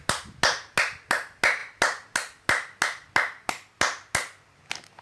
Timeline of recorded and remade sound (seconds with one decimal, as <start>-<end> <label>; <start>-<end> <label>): 0.0-5.0 recorded